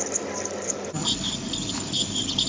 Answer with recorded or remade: recorded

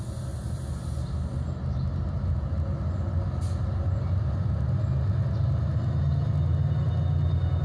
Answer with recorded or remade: recorded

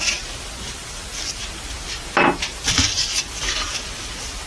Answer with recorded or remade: recorded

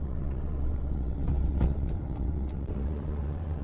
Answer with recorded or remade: remade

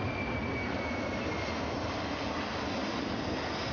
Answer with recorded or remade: recorded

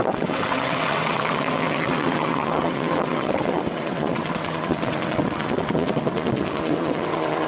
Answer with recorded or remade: remade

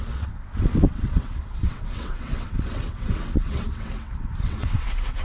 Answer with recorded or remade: remade